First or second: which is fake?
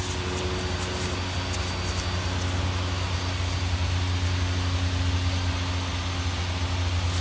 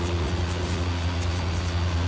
second